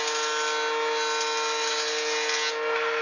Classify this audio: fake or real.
real